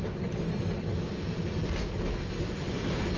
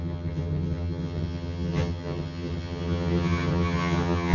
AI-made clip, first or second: second